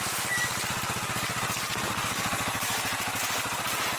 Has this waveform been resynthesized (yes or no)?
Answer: no